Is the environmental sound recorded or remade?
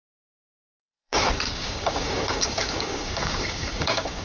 remade